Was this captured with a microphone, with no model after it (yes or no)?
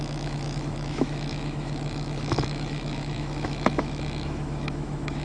no